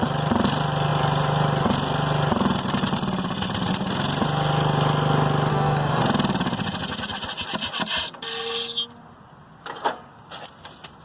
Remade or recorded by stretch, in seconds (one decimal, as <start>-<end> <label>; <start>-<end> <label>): 0.0-5.5 recorded; 5.5-6.0 remade; 6.0-11.0 recorded